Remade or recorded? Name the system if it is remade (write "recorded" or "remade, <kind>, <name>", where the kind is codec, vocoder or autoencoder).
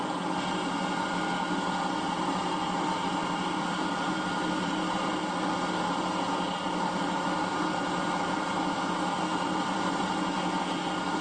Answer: recorded